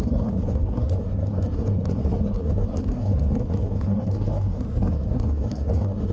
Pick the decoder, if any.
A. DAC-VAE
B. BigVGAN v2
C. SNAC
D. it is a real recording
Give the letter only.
C